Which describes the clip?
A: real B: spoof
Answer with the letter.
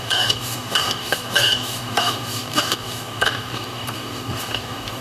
B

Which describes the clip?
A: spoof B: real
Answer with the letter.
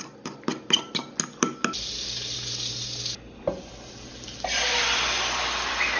B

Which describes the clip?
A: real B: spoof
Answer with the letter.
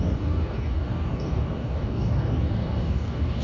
B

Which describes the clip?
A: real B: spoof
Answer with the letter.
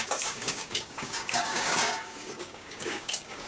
B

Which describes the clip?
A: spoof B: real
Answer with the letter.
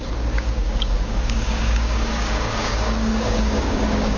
A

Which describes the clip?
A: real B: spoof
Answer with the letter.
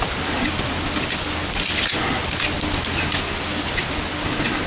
A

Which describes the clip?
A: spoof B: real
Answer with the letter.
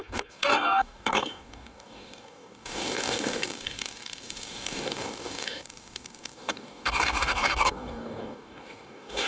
A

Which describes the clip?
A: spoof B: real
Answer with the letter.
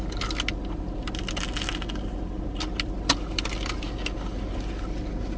B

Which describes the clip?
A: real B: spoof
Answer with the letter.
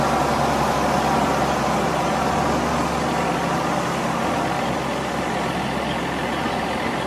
A